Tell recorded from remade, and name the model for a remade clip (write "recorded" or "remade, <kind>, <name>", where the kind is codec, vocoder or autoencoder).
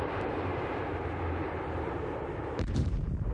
remade, vocoder, BigVGAN v2